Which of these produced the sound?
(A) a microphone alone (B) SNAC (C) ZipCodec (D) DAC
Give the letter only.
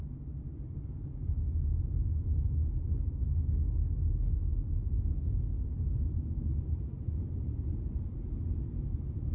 A